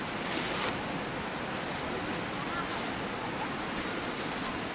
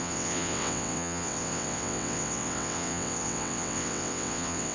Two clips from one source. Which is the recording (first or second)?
first